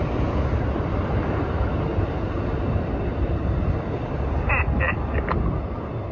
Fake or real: real